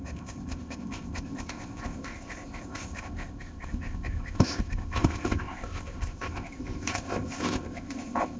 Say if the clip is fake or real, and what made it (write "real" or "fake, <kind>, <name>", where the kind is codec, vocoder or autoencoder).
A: fake, codec, ZipCodec